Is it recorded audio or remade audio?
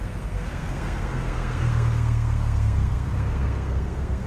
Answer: remade